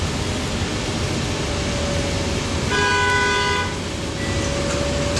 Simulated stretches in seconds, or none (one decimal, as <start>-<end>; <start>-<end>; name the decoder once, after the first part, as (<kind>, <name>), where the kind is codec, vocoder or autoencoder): none